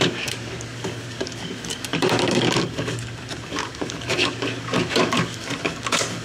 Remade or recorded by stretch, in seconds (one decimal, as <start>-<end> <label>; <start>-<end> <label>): 0.0-6.2 remade